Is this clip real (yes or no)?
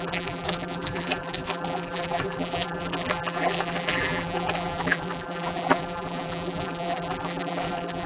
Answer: no